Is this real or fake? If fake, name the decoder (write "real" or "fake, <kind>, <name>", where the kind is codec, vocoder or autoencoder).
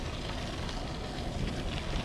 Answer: real